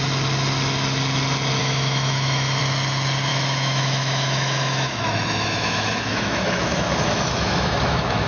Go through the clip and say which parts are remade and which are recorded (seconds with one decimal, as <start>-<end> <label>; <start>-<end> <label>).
0.0-1.6 recorded; 1.6-2.6 remade; 2.6-3.3 recorded; 3.3-8.3 remade